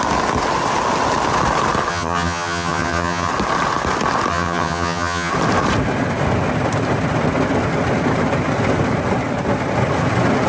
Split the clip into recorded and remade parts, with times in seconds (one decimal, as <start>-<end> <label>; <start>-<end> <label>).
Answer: 0.0-1.9 recorded; 1.9-3.3 remade; 3.3-4.3 recorded; 4.3-5.3 remade; 5.3-10.5 recorded